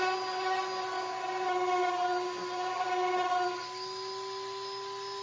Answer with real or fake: real